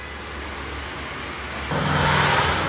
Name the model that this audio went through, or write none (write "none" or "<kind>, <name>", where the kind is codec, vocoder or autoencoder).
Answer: none